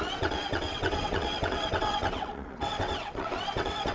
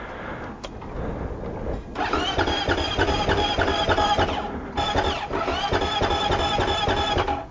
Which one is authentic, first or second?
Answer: second